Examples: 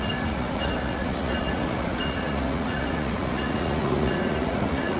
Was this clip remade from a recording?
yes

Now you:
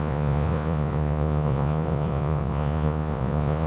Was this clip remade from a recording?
yes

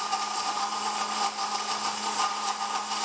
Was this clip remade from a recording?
no